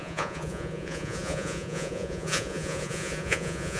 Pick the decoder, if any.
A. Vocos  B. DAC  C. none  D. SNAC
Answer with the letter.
A